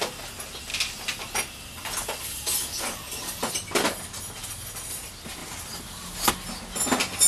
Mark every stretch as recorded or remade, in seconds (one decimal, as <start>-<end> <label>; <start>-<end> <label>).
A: 0.0-5.4 recorded; 5.4-6.3 remade; 6.3-7.3 recorded